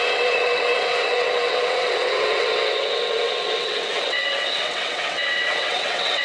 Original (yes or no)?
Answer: no